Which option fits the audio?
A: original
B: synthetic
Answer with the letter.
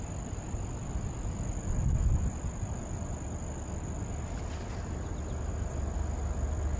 A